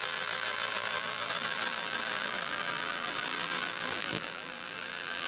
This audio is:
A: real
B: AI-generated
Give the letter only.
B